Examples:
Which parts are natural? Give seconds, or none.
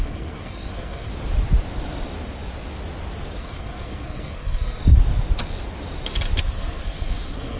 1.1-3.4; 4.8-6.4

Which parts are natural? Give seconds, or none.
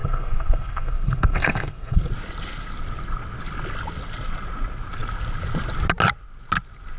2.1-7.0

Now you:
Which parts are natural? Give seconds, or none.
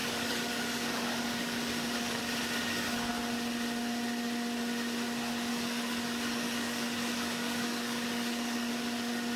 2.2-2.6; 3.1-5.5; 8.7-9.4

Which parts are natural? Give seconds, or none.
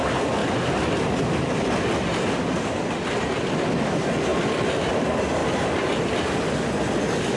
0.0-7.4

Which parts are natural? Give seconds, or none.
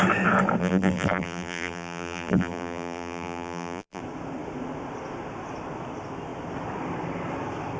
0.0-0.6; 4.0-7.8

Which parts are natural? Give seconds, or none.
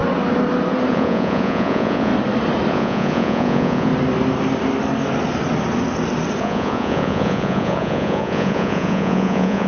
0.0-0.9; 2.1-2.7; 3.9-6.4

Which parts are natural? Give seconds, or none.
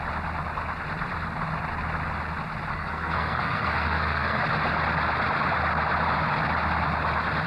0.0-2.7; 4.4-7.5